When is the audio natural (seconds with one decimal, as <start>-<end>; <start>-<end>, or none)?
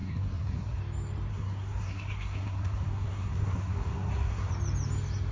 0.8-1.3; 4.5-5.3